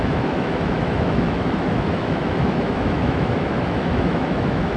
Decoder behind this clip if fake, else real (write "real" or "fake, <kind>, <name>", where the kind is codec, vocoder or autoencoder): fake, autoencoder, DAC-VAE